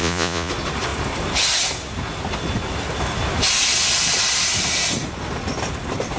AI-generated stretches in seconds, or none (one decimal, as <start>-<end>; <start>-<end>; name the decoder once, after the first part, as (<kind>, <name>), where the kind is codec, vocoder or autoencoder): 0.0-0.5 (vocoder, Vocos)